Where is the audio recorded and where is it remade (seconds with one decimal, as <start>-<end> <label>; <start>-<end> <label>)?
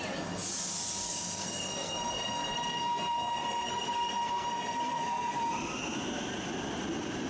0.0-1.0 recorded; 1.0-5.4 remade; 5.4-7.3 recorded